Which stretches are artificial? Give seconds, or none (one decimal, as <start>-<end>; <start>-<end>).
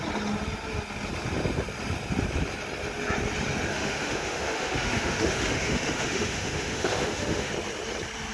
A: 3.7-7.5